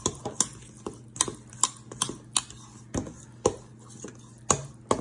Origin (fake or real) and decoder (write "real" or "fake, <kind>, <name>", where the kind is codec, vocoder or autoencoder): real